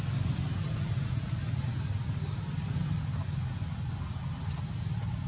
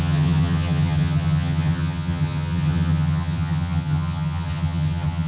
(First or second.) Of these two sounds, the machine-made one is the second